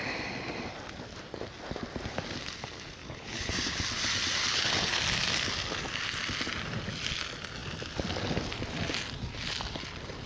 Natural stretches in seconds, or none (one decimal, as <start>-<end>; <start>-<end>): 0.0-3.0; 3.5-4.4; 5.0-10.3